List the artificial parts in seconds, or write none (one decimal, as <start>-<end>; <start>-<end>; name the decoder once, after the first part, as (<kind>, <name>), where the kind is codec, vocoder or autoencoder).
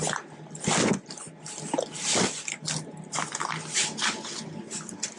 none